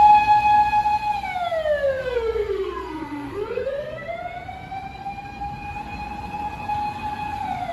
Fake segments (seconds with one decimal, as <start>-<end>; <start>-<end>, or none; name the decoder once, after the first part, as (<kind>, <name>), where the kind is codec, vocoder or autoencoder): 2.0-4.1 (codec, SNAC)